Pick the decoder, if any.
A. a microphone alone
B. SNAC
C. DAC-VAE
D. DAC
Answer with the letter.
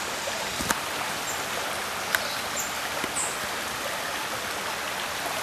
A